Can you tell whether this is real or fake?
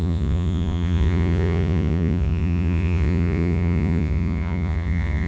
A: fake